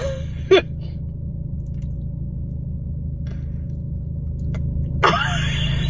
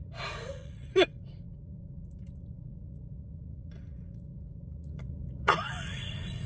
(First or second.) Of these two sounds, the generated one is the second